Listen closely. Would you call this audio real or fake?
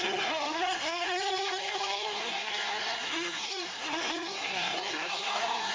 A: fake